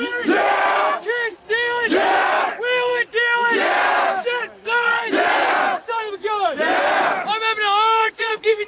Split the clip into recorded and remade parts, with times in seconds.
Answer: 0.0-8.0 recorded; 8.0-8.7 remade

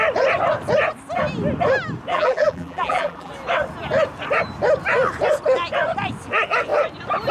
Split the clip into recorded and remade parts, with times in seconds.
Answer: 0.0-2.1 recorded; 2.1-3.3 remade; 3.3-7.3 recorded